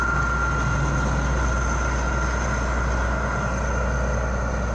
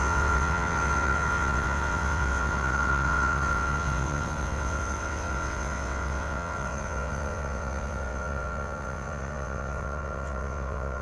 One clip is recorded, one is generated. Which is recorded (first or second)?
first